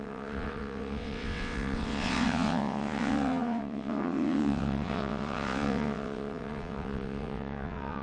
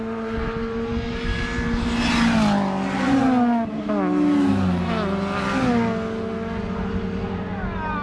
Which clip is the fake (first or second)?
first